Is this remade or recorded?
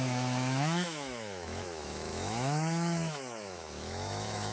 remade